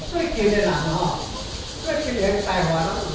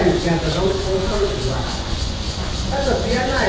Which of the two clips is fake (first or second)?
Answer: second